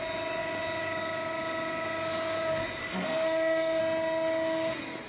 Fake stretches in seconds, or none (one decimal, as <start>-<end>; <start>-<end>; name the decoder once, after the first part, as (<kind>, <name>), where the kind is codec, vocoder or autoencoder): 2.8-3.8 (autoencoder, DAC-VAE)